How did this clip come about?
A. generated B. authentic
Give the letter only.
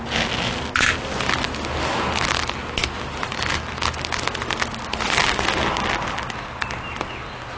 B